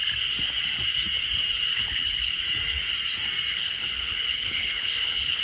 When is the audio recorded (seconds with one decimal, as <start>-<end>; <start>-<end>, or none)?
0.0-1.7; 2.4-3.5